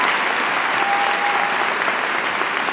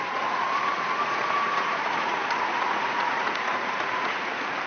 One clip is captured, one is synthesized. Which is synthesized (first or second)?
second